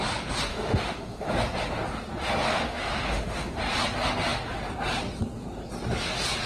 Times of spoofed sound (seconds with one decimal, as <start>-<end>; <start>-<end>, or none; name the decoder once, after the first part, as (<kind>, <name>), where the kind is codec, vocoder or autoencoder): 0.5-1.3 (autoencoder, DAC-VAE); 2.5-3.6